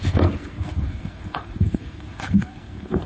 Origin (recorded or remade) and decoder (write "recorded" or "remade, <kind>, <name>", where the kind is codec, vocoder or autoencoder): remade, codec, SNAC